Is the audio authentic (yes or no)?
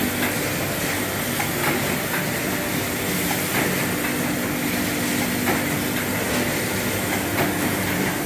yes